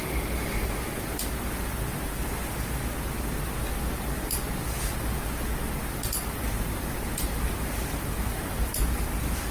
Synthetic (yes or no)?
no